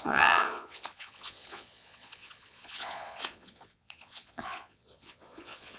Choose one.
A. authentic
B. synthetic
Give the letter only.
B